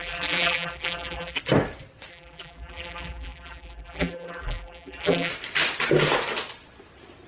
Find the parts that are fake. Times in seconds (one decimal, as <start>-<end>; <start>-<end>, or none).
0.0-1.4; 2.1-5.3